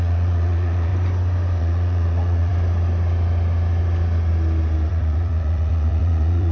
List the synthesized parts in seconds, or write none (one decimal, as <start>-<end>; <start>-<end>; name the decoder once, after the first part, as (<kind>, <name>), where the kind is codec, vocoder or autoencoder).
0.0-0.9 (vocoder, Vocos); 1.6-2.5; 4.9-6.5